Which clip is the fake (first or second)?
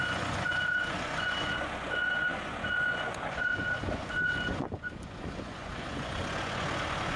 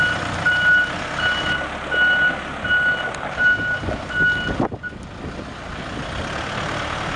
first